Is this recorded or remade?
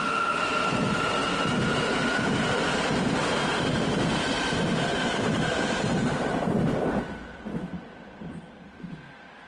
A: recorded